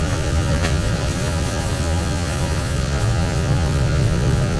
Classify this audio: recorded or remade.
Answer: remade